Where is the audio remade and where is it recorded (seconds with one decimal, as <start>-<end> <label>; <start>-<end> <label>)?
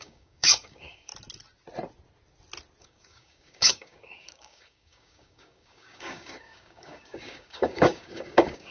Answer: 0.0-1.1 remade; 1.1-2.8 recorded; 2.8-8.7 remade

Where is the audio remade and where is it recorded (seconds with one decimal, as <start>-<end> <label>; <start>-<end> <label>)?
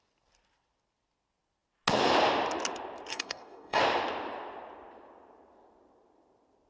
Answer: 0.0-3.1 recorded; 3.1-3.8 remade; 3.8-6.7 recorded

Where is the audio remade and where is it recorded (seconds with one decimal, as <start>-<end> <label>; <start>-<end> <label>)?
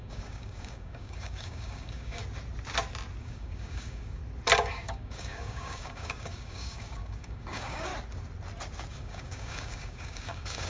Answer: 0.0-2.2 remade; 2.2-3.2 recorded; 3.2-4.2 remade; 4.2-4.7 recorded; 4.7-7.9 remade; 7.9-8.9 recorded; 8.9-10.7 remade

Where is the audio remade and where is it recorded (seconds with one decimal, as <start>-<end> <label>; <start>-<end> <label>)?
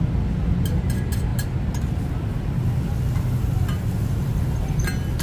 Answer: 0.0-5.2 recorded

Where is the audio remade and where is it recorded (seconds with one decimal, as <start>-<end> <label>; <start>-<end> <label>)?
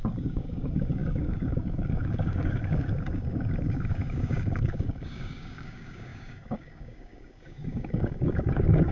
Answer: 0.0-8.9 remade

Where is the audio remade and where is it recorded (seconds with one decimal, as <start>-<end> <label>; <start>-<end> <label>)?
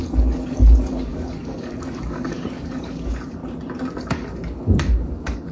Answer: 0.0-3.4 remade; 3.4-4.0 recorded; 4.0-5.5 remade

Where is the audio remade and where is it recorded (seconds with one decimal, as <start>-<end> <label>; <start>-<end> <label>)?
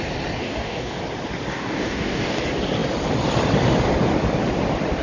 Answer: 0.0-0.4 recorded; 0.4-1.0 remade; 1.0-1.5 recorded; 1.5-2.4 remade; 2.4-5.0 recorded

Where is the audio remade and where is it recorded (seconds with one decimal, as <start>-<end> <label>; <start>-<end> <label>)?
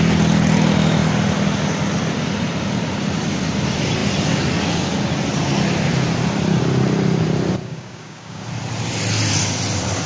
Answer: 0.0-7.6 recorded; 7.6-8.4 remade; 8.4-10.1 recorded